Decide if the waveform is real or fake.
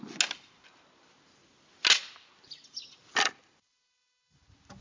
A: real